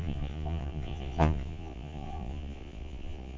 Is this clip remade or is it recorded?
remade